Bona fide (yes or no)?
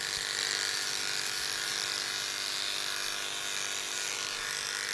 yes